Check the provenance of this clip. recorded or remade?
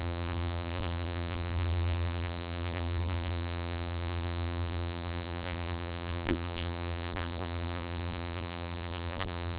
remade